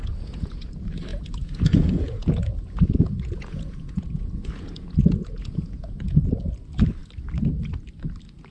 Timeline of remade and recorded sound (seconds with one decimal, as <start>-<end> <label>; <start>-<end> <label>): 0.0-0.7 remade; 0.7-1.1 recorded; 1.1-6.2 remade; 6.2-8.5 recorded